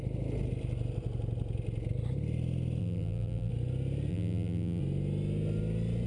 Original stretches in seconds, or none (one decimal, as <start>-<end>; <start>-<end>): 0.0-2.8; 3.5-4.1; 4.8-6.1